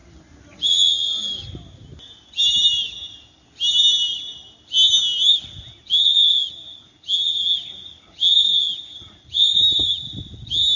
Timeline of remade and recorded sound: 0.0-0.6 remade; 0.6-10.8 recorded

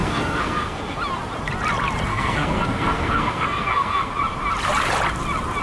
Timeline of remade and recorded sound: 0.0-1.0 remade; 1.0-2.1 recorded; 2.1-4.1 remade; 4.1-5.6 recorded

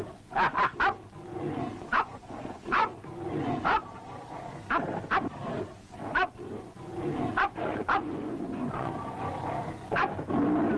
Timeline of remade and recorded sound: 0.0-1.3 recorded; 1.3-4.6 remade; 4.6-6.0 recorded; 6.0-10.3 remade; 10.3-10.8 recorded

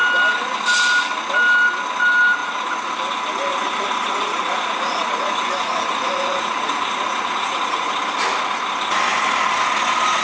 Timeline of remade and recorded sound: 0.0-2.4 recorded; 2.4-2.9 remade; 2.9-3.5 recorded; 3.5-7.9 remade; 7.9-10.2 recorded

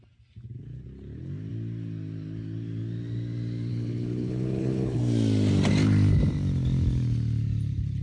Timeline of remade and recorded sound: 0.0-3.7 recorded; 3.7-5.0 remade; 5.0-8.0 recorded

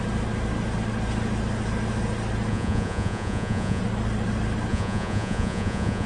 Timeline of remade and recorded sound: 0.0-2.5 recorded; 2.5-3.8 remade; 3.8-4.7 recorded; 4.7-6.1 remade